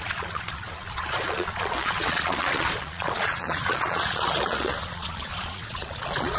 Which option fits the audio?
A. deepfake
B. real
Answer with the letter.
A